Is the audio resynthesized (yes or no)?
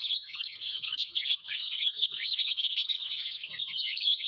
yes